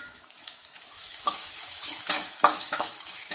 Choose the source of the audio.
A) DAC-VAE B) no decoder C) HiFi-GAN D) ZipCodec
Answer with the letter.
A